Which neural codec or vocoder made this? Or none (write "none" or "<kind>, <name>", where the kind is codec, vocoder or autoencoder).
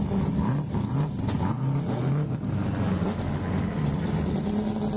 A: none